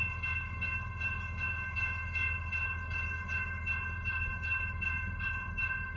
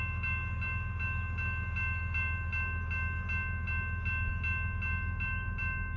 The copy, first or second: first